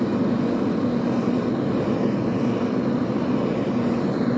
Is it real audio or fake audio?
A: real